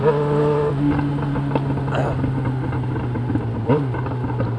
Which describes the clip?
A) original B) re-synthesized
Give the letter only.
A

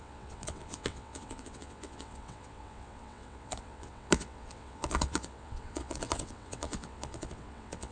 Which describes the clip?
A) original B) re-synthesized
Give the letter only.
B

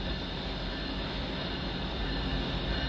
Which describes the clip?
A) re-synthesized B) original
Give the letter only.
B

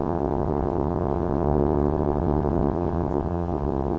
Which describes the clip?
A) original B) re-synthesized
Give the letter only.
B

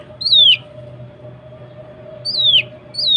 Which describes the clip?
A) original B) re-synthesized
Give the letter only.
A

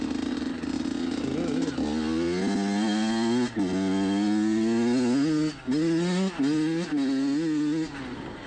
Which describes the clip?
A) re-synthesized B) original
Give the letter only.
B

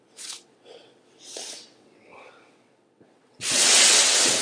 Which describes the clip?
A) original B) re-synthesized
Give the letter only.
B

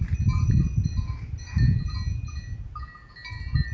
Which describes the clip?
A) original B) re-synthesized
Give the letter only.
A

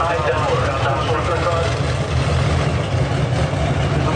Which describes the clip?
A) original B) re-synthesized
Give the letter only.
A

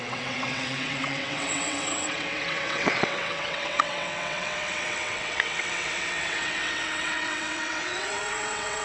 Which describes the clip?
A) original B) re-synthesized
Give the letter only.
B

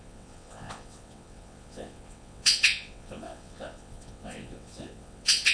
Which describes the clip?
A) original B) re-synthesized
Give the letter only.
B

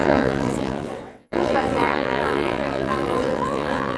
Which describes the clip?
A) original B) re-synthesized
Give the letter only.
B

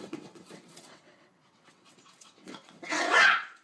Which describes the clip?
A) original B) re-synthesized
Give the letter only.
B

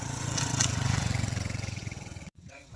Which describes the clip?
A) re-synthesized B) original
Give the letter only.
A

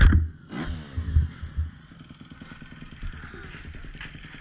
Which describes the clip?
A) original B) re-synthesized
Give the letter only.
A